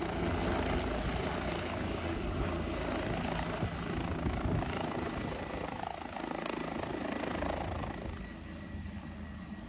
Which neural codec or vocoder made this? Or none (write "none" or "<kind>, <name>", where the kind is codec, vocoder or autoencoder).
none